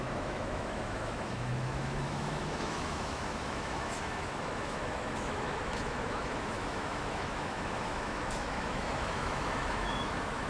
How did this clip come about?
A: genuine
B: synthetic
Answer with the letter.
B